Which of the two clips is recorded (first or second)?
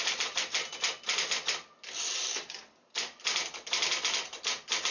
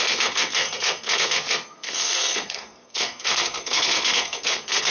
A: first